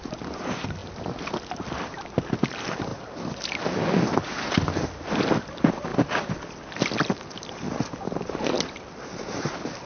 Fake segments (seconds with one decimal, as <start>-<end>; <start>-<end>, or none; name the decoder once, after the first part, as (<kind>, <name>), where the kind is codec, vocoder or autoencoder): none